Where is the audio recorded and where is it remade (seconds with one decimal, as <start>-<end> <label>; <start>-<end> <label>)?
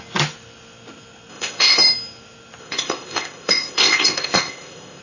0.0-1.3 recorded; 1.3-1.8 remade; 1.8-2.6 recorded; 2.6-5.0 remade